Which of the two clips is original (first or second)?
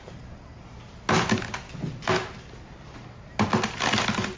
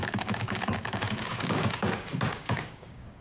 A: first